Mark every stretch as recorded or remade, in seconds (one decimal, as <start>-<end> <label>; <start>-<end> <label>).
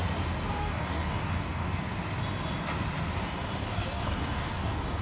0.0-0.6 recorded; 0.6-1.8 remade; 1.8-3.6 recorded; 3.6-5.0 remade